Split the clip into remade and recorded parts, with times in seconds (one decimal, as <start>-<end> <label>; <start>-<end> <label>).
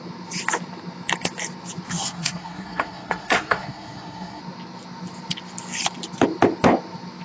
0.0-1.9 recorded; 1.9-4.4 remade; 4.4-7.2 recorded